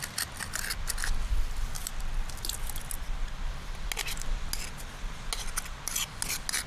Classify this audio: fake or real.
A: real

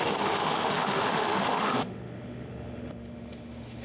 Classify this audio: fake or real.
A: fake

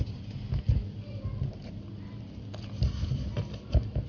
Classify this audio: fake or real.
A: real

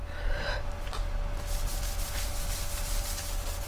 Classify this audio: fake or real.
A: real